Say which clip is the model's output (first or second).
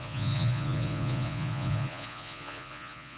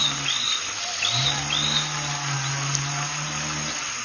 first